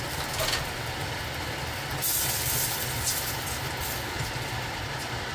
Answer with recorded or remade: recorded